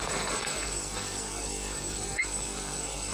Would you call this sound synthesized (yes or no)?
yes